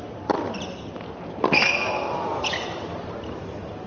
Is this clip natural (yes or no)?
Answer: no